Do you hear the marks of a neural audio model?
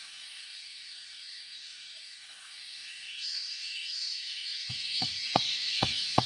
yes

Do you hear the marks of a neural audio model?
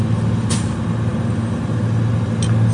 no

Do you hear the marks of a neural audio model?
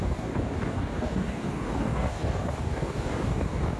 yes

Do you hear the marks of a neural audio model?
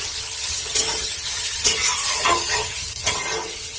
yes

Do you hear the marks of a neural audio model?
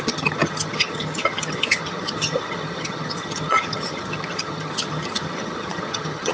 yes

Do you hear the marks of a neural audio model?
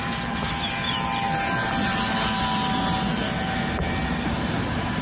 no